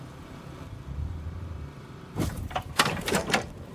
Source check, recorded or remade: remade